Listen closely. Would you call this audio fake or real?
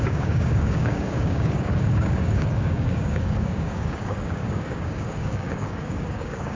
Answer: fake